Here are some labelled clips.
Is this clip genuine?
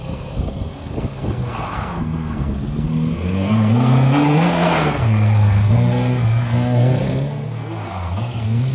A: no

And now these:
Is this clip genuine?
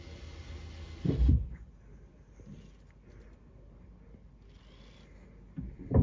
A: yes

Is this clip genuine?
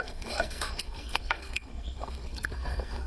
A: no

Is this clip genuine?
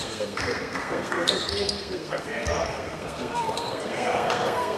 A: no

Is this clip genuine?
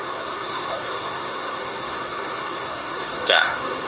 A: no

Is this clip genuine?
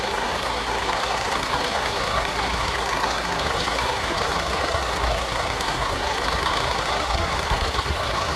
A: no